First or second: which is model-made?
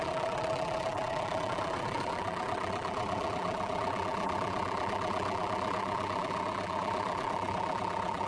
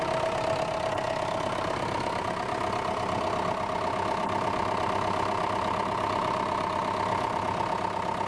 first